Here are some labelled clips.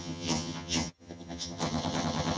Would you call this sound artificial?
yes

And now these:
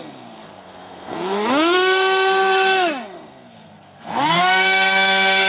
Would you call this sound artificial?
yes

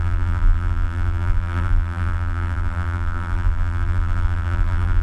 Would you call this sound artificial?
yes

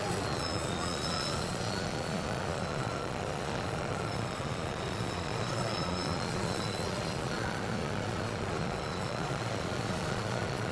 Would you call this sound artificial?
yes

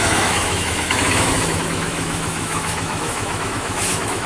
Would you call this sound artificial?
yes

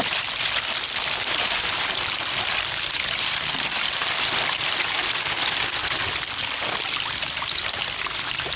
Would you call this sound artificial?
yes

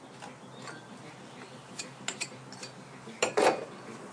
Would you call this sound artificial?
no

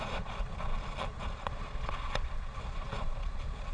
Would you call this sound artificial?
yes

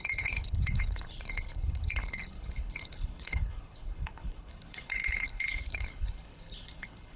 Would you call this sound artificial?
yes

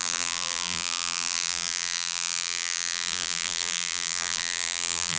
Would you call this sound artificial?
yes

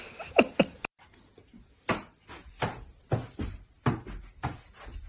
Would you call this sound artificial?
no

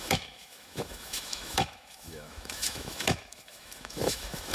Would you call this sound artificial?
yes